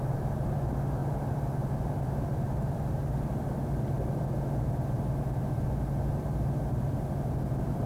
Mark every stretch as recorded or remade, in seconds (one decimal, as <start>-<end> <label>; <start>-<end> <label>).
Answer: 0.0-3.3 remade; 3.3-6.1 recorded; 6.1-7.9 remade